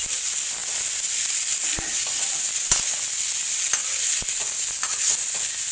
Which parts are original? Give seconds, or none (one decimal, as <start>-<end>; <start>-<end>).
0.0-5.7